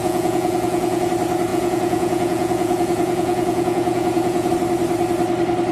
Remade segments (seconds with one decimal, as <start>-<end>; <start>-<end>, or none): 0.0-1.1; 1.5-4.5